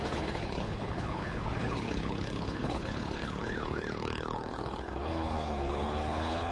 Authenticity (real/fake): fake